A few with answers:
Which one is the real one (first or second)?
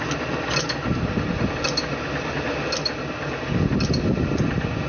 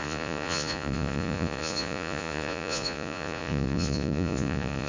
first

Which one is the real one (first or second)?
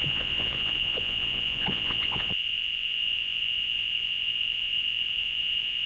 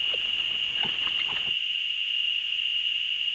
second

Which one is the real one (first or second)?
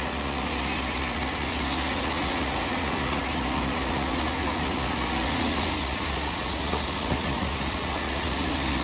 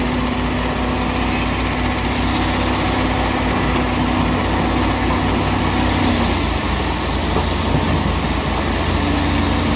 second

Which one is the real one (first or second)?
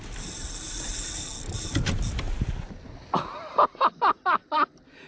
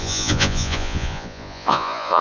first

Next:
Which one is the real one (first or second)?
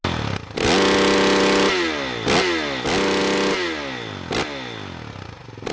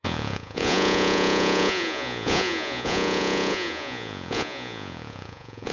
first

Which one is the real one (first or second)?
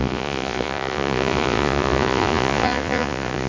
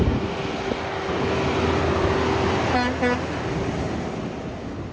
second